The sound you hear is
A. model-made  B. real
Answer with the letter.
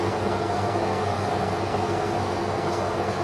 A